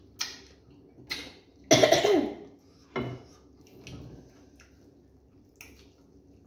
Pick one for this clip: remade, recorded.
recorded